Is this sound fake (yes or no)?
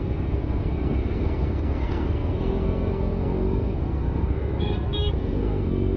yes